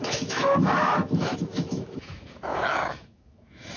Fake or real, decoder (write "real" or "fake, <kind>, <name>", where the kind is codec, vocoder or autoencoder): fake, autoencoder, DAC-VAE